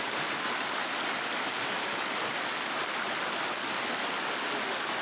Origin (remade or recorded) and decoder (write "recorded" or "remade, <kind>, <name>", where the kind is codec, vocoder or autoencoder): recorded